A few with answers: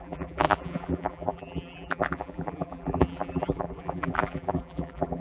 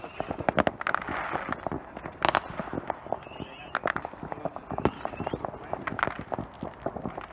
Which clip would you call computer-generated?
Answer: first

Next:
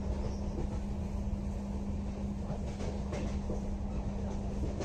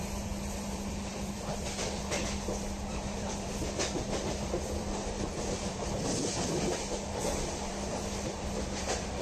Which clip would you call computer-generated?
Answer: second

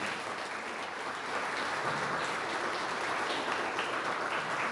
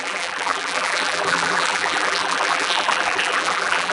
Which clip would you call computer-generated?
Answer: second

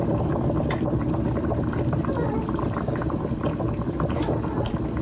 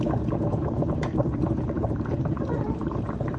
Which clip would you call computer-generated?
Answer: second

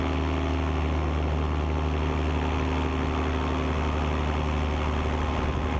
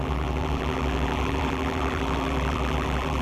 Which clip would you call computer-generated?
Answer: second